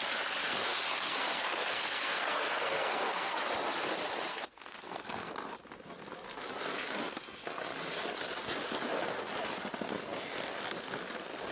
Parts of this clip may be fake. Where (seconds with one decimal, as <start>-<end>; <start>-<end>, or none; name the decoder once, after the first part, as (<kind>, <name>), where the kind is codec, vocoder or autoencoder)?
0.4-3.4 (codec, SNAC); 4.3-5.3